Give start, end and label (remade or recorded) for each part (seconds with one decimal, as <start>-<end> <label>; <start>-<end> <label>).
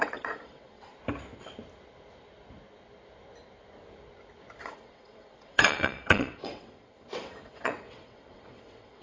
0.0-0.9 remade; 0.9-4.6 recorded; 4.6-9.0 remade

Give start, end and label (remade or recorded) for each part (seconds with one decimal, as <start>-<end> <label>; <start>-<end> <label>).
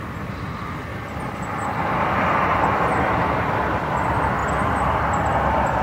0.0-0.9 recorded; 0.9-1.5 remade; 1.5-4.4 recorded; 4.4-5.0 remade; 5.0-5.8 recorded